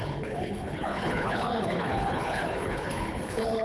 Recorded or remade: remade